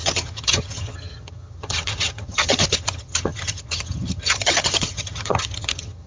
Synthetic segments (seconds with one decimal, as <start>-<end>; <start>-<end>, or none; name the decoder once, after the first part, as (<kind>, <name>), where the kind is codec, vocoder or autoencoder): 0.0-6.1 (vocoder, HiFi-GAN)